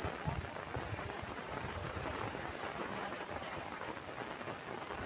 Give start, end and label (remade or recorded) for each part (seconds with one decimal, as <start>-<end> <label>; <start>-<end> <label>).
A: 0.0-0.9 recorded; 0.9-3.9 remade; 3.9-5.1 recorded